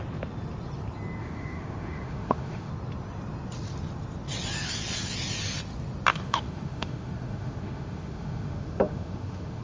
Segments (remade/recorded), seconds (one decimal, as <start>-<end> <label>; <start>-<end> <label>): 0.0-1.2 recorded; 1.2-2.7 remade; 2.7-6.1 recorded; 6.1-9.6 remade